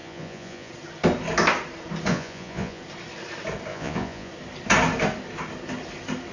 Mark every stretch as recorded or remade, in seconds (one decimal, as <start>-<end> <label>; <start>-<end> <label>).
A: 0.0-0.7 remade; 0.7-2.1 recorded; 2.1-2.8 remade; 2.8-3.7 recorded; 3.7-4.3 remade; 4.3-6.3 recorded